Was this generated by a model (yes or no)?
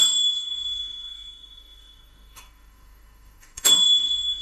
yes